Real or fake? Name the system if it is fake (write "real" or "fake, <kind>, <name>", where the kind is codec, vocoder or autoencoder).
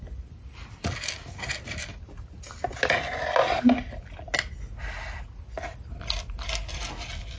real